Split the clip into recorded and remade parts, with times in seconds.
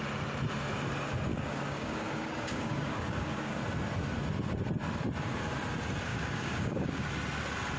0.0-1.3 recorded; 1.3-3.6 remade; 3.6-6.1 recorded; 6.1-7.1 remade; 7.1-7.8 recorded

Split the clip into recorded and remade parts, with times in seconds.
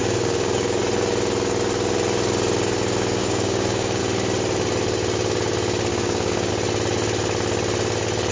0.0-0.8 remade; 0.8-3.2 recorded; 3.2-4.0 remade; 4.0-5.9 recorded; 5.9-6.5 remade; 6.5-8.3 recorded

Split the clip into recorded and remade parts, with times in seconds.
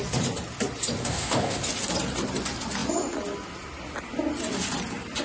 0.0-1.0 recorded; 1.0-1.6 remade; 1.6-5.2 recorded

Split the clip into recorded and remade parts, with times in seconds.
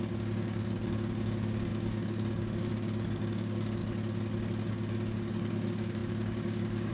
0.0-3.8 remade; 3.8-4.6 recorded; 4.6-6.9 remade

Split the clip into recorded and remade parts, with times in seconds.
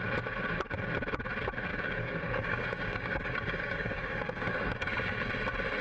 0.0-1.7 recorded; 1.7-5.2 remade; 5.2-5.8 recorded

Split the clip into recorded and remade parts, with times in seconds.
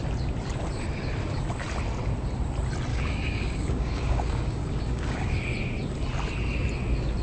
0.0-2.9 recorded; 2.9-5.4 remade; 5.4-7.2 recorded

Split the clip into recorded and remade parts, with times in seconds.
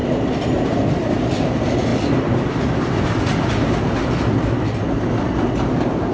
0.0-6.1 recorded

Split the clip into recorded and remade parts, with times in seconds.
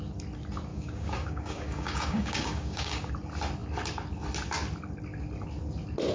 0.0-0.7 recorded; 0.7-3.1 remade; 3.1-6.1 recorded